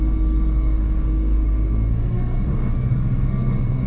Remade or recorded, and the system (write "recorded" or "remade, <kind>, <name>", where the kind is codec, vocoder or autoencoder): remade, codec, SNAC